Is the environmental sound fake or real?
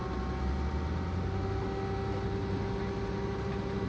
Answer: real